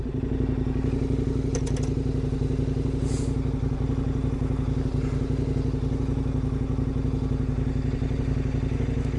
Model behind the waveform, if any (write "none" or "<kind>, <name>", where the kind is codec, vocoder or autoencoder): none